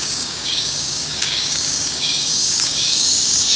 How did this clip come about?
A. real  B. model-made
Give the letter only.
B